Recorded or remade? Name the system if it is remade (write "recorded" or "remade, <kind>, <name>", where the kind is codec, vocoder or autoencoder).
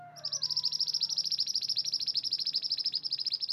recorded